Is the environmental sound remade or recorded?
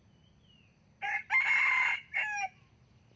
recorded